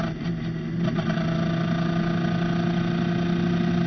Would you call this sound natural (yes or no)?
yes